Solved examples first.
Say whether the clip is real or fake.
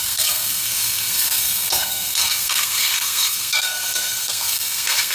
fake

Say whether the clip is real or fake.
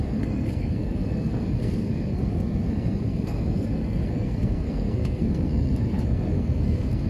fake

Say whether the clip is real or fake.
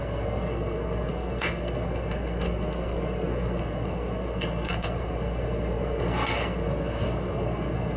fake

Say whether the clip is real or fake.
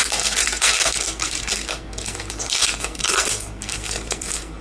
fake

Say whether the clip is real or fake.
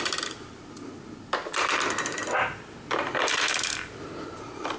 real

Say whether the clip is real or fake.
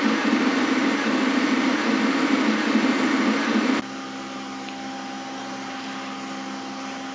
real